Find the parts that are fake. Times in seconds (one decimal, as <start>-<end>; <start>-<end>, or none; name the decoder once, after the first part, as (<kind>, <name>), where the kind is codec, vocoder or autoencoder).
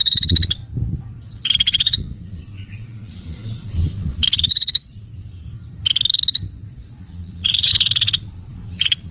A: 0.0-0.6 (vocoder, Vocos); 1.3-5.1; 6.7-9.1